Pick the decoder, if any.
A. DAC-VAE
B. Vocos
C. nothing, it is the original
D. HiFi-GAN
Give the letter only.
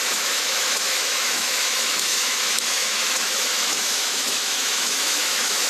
A